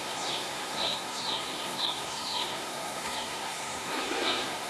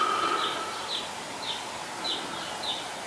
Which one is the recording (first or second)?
second